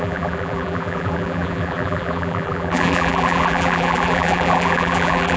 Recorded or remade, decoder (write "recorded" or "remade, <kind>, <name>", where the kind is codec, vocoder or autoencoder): remade, vocoder, BigVGAN v2